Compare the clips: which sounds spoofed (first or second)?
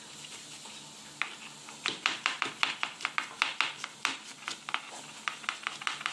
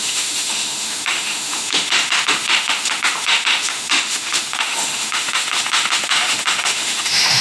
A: second